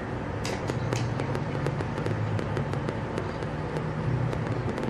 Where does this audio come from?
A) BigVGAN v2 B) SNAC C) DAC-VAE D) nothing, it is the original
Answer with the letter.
D